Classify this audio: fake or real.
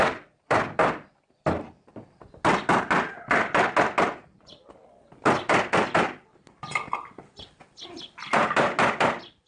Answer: real